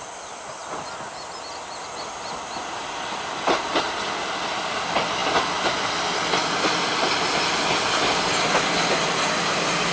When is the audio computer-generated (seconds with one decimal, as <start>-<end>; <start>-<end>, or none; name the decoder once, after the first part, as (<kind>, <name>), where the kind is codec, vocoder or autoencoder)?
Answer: none